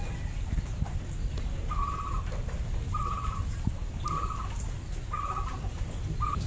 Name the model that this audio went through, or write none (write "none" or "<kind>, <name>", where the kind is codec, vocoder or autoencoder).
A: none